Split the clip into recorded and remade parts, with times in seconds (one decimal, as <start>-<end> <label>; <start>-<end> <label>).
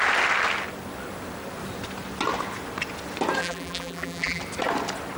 0.0-3.4 recorded; 3.4-4.4 remade; 4.4-5.2 recorded